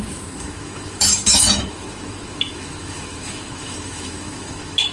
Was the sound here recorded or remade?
remade